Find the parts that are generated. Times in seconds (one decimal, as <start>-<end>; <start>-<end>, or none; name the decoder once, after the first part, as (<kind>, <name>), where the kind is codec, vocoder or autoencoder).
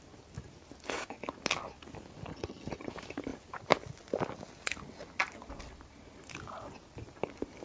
2.3-2.9 (vocoder, HiFi-GAN)